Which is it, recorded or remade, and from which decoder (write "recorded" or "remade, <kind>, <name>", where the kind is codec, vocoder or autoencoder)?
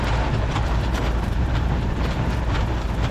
remade, vocoder, BigVGAN v2